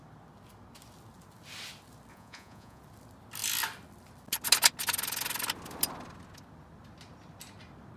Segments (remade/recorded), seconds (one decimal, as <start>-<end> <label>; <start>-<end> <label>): 0.0-2.1 recorded; 2.1-2.8 remade; 2.8-8.0 recorded